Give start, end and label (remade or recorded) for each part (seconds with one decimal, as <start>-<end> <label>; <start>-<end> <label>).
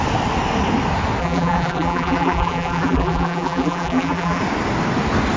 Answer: 0.0-1.2 recorded; 1.2-4.4 remade; 4.4-5.4 recorded